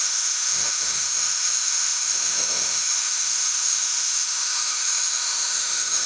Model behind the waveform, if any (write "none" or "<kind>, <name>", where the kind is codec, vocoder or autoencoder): autoencoder, DAC-VAE